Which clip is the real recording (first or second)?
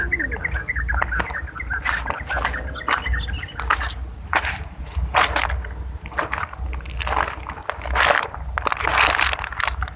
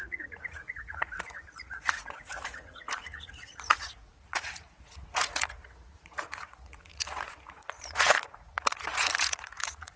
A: first